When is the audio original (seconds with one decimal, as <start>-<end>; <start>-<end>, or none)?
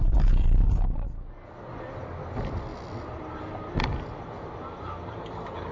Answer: 0.0-5.7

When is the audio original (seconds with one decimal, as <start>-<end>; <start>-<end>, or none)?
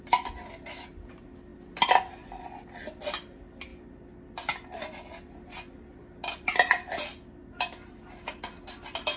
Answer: 0.0-9.2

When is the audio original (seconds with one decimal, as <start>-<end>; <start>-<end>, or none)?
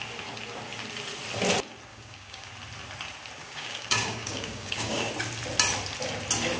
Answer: 0.0-1.9; 2.5-3.4; 5.1-6.6